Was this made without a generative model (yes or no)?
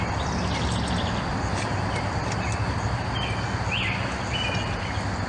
yes